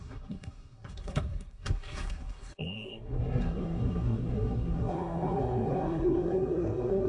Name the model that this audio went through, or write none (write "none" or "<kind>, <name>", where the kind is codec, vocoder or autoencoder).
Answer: codec, SNAC